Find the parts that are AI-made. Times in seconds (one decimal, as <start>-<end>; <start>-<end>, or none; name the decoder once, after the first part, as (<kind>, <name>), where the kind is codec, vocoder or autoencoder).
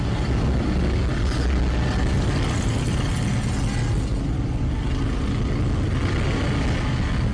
none